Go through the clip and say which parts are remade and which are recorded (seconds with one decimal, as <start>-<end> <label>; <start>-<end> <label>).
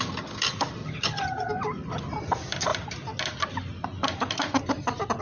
0.0-0.8 recorded; 0.8-1.5 remade; 1.5-5.2 recorded